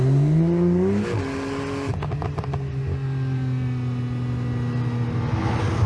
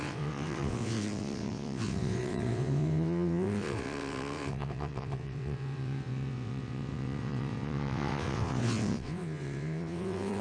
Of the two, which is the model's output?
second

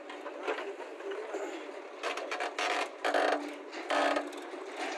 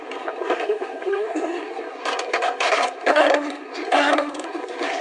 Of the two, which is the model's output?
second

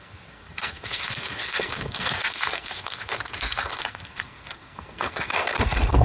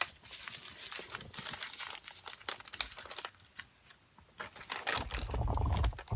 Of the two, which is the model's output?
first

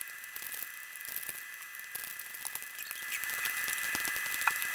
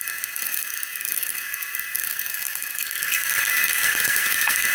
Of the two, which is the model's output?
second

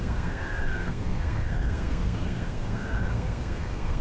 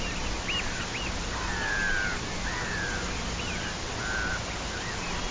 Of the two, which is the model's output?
first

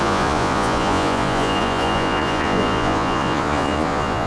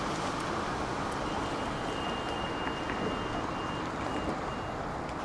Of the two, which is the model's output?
first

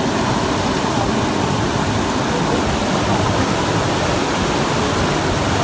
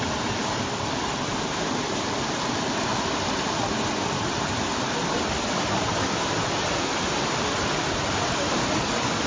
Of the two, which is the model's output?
second